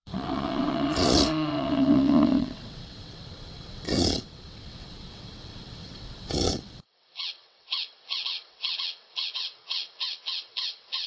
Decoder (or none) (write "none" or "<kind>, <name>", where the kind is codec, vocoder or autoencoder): vocoder, WaveNeXt